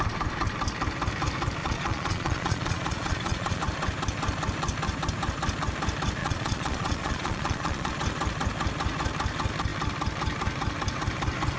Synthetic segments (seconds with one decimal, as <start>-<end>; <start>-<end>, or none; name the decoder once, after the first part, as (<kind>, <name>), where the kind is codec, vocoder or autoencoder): 1.6-3.6 (vocoder, Vocos); 6.2-7.9